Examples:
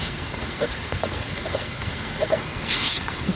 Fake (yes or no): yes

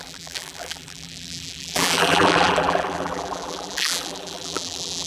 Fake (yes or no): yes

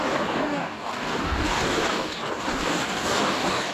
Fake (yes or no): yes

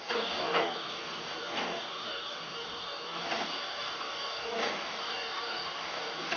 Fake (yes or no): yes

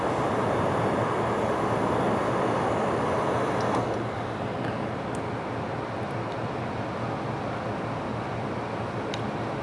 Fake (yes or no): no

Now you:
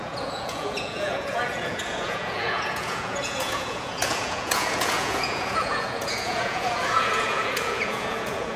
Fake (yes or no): yes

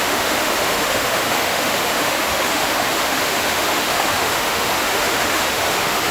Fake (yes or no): yes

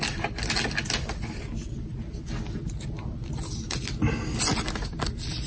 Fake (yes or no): no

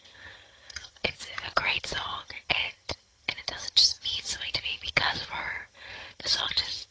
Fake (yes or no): yes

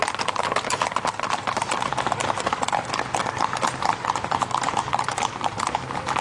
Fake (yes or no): no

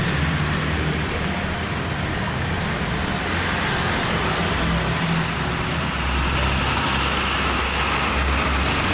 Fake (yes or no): no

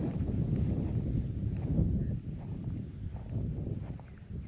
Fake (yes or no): no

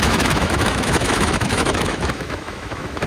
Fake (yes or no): yes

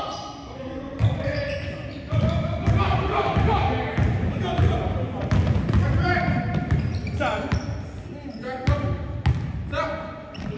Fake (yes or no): no